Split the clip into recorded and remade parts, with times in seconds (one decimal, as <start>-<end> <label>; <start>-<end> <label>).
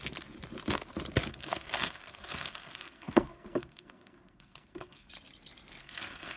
0.0-1.3 recorded; 1.3-5.1 remade; 5.1-5.8 recorded; 5.8-6.4 remade